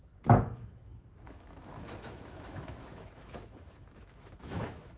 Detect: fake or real fake